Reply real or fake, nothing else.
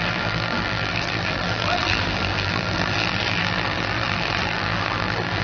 fake